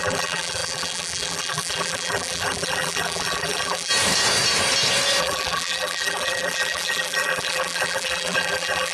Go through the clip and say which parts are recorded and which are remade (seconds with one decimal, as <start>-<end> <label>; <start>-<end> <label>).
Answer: 0.0-3.9 remade; 3.9-5.2 recorded; 5.2-8.9 remade